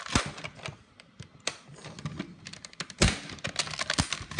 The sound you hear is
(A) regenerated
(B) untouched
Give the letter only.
B